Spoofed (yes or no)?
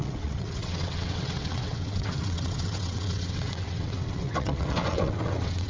yes